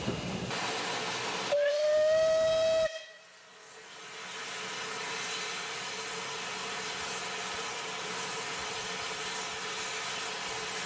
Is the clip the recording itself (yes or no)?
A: yes